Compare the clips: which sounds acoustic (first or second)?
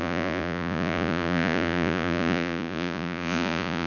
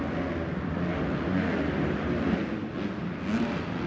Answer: second